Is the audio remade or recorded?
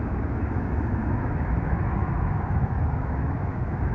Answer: remade